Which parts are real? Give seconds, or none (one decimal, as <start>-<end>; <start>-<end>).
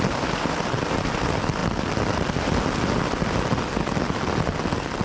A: 0.0-5.0